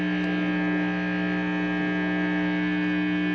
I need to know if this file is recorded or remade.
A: recorded